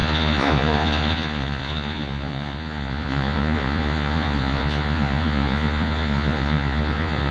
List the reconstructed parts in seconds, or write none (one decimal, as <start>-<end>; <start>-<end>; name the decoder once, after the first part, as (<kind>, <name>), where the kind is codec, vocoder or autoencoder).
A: 0.0-7.3 (vocoder, Vocos)